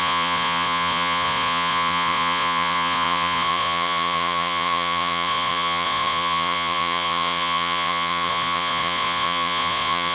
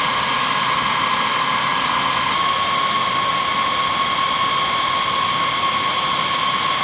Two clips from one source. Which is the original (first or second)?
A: second